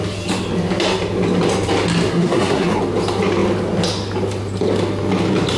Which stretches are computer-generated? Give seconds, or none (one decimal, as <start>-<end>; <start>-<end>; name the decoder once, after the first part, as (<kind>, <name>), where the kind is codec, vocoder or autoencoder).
2.1-2.8 (codec, SNAC)